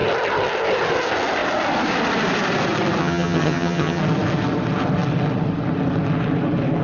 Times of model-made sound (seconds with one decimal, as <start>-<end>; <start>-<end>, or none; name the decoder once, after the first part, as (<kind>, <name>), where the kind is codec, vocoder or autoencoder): 3.0-4.0 (vocoder, HiFi-GAN)